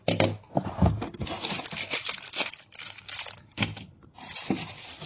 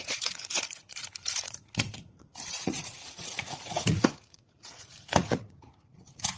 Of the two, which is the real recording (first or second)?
first